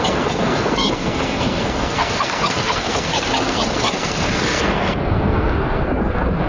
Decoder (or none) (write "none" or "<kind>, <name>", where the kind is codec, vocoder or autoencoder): codec, SNAC